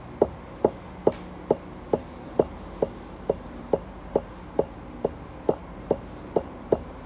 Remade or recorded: recorded